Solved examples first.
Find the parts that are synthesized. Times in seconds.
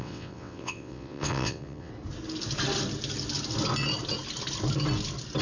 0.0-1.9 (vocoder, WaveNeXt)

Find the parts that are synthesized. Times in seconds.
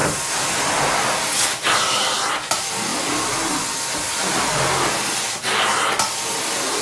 none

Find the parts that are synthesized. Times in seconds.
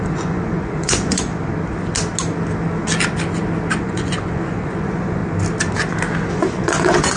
0.0-1.3 (vocoder, Vocos); 3.8-5.2; 6.3-7.2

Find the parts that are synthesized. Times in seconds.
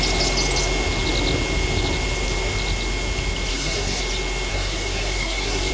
3.5-4.0 (codec, SNAC); 4.5-5.7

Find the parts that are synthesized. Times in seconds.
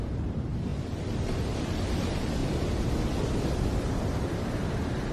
0.0-2.4 (vocoder, BigVGAN v2); 4.5-5.1